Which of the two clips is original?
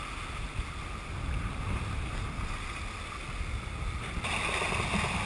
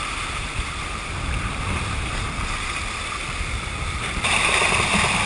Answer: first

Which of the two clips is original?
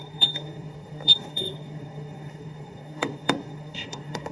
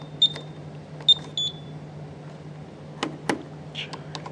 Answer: second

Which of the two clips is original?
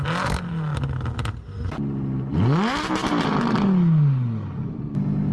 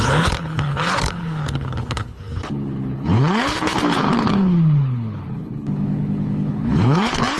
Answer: first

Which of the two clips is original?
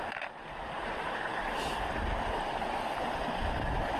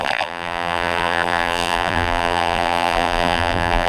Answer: first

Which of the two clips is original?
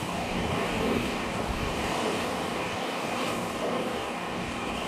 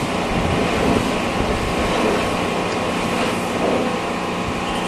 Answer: second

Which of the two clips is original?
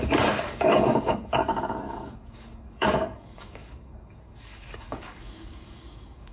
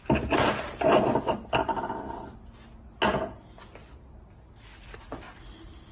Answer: second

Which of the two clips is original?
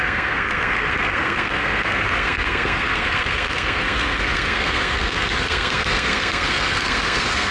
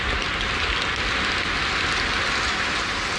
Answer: second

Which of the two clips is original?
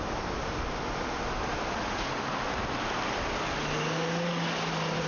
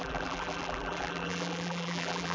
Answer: first